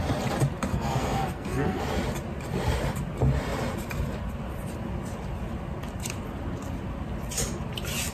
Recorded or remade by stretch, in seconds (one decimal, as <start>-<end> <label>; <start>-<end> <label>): 0.0-0.7 recorded; 0.7-1.8 remade; 1.8-8.1 recorded

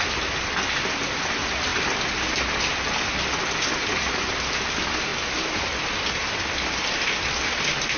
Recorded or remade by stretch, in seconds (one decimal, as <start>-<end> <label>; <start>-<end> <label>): 0.0-8.0 recorded

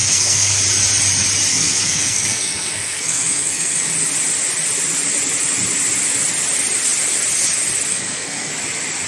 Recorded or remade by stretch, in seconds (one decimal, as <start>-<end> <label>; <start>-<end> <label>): 0.0-0.6 remade; 0.6-1.5 recorded; 1.5-3.9 remade; 3.9-7.9 recorded; 7.9-8.5 remade; 8.5-9.1 recorded

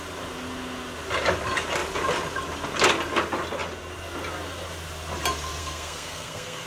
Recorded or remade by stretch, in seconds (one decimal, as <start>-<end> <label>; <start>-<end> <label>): 0.0-5.6 recorded; 5.6-6.7 remade

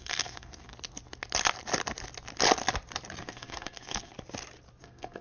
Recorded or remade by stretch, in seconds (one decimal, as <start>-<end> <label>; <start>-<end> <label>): 0.0-0.7 remade; 0.7-3.2 recorded; 3.2-4.1 remade; 4.1-4.8 recorded; 4.8-5.2 remade

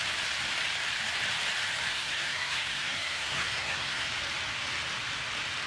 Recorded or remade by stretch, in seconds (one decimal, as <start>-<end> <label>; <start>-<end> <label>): 0.0-1.9 recorded; 1.9-4.1 remade; 4.1-5.7 recorded

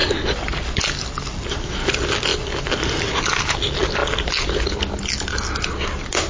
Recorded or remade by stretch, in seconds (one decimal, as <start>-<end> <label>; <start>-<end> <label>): 0.0-6.3 recorded

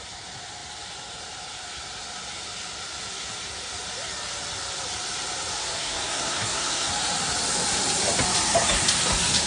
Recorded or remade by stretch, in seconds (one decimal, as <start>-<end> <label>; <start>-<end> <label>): 0.0-5.6 recorded; 5.6-6.9 remade; 6.9-9.5 recorded